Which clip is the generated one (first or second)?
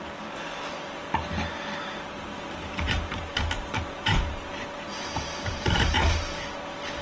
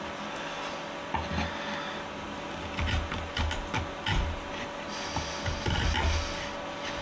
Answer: first